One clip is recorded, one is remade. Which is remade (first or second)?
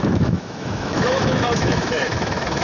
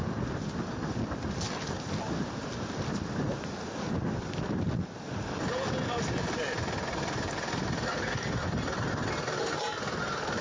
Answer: first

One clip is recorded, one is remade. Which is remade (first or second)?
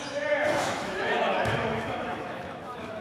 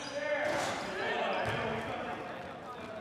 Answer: first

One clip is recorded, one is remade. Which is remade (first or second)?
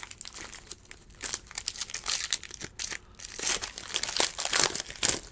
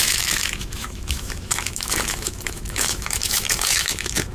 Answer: second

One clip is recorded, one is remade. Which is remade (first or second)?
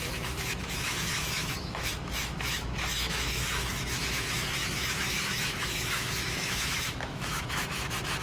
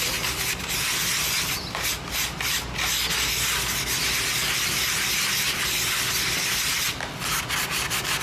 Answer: first